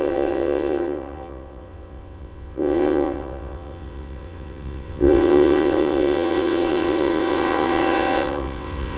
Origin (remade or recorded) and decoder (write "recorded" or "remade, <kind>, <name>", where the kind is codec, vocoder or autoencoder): remade, vocoder, WaveNeXt